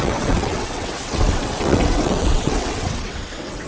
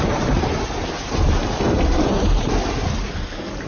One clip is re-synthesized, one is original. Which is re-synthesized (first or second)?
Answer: first